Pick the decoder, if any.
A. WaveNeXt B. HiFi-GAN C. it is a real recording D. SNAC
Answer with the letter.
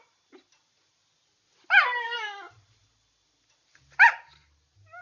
C